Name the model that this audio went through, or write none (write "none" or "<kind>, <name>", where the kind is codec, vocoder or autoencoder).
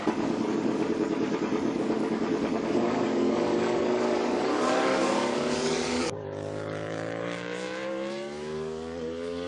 codec, DAC